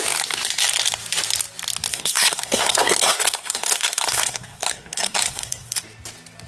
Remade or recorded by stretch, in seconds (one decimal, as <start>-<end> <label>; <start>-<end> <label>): 0.0-1.9 recorded; 1.9-5.8 remade; 5.8-6.5 recorded